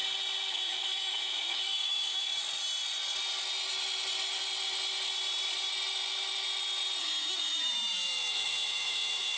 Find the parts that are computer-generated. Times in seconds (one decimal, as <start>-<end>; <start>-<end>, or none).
0.5-2.3; 7.0-9.4